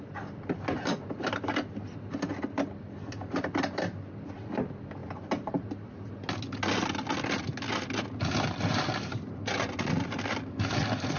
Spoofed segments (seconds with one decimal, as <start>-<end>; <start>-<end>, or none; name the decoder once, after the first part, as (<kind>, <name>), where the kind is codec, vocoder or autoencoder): none